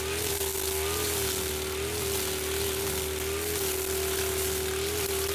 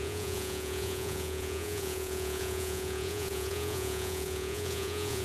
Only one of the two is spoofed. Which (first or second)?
second